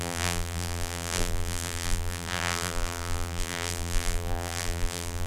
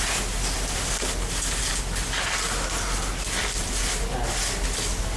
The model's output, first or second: first